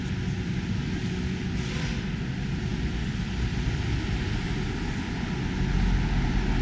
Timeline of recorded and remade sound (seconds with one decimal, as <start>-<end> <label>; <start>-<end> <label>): 0.0-6.6 recorded